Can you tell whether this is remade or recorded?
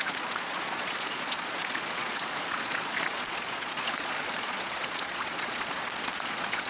remade